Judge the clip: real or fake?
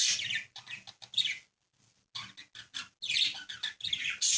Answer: real